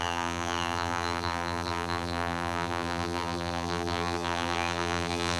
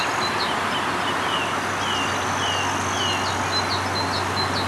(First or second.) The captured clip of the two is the second